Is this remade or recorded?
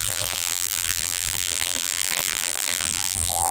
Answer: remade